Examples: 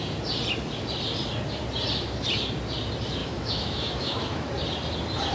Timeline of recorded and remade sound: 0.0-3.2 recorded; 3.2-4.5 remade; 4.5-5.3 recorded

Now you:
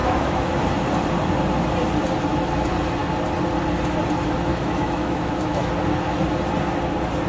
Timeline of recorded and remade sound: 0.0-0.5 remade; 0.5-4.5 recorded; 4.5-5.7 remade; 5.7-7.3 recorded